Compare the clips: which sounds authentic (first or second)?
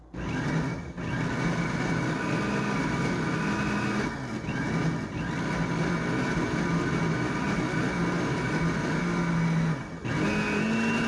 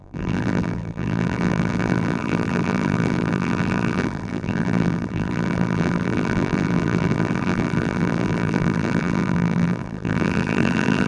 first